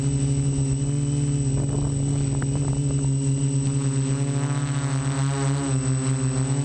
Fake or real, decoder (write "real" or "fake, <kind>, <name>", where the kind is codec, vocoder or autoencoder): real